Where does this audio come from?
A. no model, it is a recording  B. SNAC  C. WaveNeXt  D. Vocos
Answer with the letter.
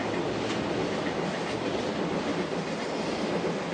A